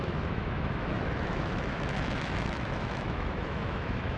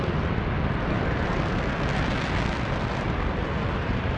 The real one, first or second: second